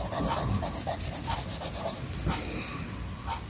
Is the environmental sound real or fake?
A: real